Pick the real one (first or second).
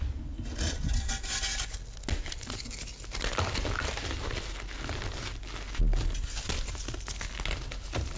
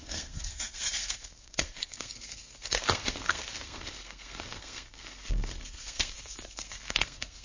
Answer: first